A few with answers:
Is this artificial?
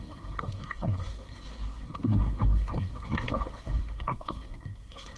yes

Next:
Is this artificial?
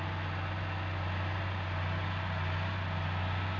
no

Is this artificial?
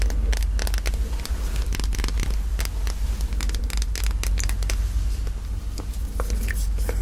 no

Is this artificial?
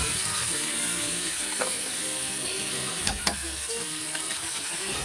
yes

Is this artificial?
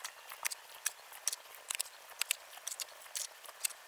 no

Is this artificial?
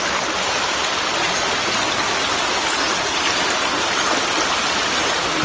no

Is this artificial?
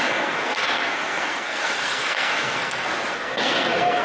yes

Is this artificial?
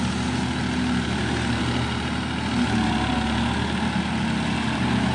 no